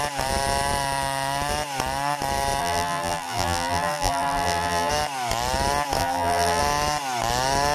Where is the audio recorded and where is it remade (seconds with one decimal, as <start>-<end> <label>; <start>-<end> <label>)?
0.0-2.6 recorded; 2.6-4.9 remade; 4.9-6.0 recorded; 6.0-6.6 remade; 6.6-7.7 recorded